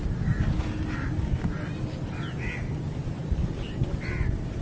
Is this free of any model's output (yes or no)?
yes